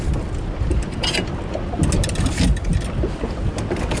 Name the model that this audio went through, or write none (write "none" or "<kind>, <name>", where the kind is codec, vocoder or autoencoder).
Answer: none